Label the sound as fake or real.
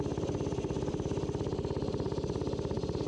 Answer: real